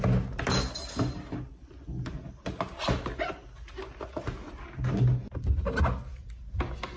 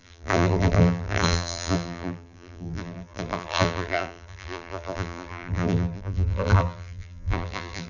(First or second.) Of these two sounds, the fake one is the second